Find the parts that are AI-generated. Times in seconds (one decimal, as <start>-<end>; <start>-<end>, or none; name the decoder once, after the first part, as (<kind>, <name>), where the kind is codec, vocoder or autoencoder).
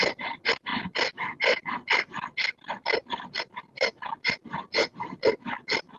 none